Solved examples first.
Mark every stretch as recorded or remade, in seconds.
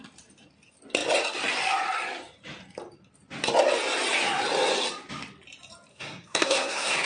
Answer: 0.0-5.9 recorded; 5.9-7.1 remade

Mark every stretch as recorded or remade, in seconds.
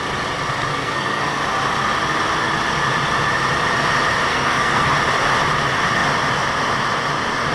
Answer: 0.0-0.7 recorded; 0.7-1.4 remade; 1.4-4.3 recorded; 4.3-4.9 remade; 4.9-7.5 recorded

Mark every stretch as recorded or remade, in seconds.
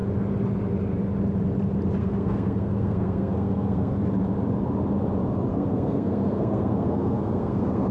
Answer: 0.0-2.0 recorded; 2.0-4.0 remade; 4.0-5.5 recorded; 5.5-7.9 remade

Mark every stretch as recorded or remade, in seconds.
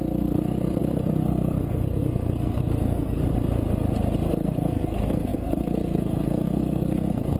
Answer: 0.0-3.2 remade; 3.2-4.3 recorded; 4.3-7.4 remade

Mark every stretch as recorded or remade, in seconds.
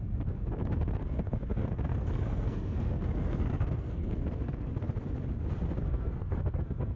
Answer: 0.0-4.7 remade; 4.7-5.8 recorded; 5.8-7.0 remade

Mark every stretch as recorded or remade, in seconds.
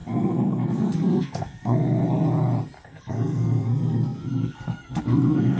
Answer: 0.0-2.0 remade; 2.0-2.8 recorded; 2.8-5.6 remade